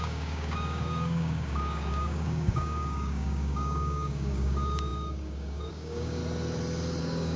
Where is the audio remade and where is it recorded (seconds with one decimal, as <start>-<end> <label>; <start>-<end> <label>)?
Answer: 0.0-6.2 remade; 6.2-7.0 recorded; 7.0-7.4 remade